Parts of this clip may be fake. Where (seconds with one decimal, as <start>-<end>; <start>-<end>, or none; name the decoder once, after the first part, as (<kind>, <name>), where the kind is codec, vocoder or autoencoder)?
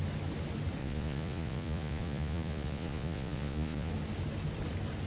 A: 0.8-3.9 (vocoder, Vocos)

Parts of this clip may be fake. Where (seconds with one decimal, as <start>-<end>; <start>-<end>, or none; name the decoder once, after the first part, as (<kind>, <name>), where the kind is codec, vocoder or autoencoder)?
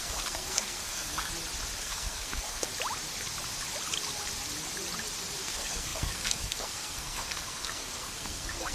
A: 0.0-1.3 (codec, SNAC); 1.8-2.7; 5.4-8.7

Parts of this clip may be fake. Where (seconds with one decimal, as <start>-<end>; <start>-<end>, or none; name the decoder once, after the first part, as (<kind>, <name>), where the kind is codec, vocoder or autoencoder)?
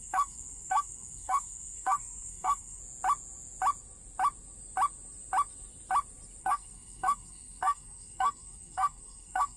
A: 0.0-2.8 (codec, SNAC); 6.4-9.6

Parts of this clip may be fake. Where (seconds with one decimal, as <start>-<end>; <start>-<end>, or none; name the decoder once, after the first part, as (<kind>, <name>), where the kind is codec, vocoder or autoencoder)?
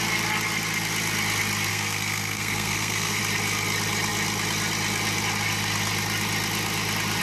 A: 1.7-3.2 (codec, SNAC)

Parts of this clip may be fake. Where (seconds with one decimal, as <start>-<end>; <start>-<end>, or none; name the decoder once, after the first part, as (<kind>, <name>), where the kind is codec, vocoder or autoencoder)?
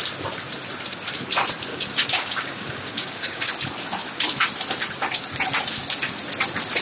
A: 1.7-3.5 (codec, DAC)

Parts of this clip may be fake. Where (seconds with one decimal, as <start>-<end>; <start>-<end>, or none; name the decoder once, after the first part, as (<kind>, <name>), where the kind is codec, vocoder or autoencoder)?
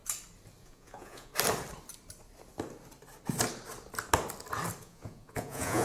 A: 0.6-1.3 (vocoder, Vocos); 4.8-5.8